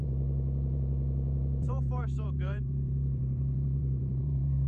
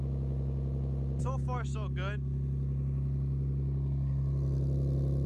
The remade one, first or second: first